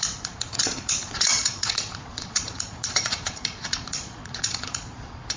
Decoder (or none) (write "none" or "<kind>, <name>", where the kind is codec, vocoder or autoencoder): vocoder, Vocos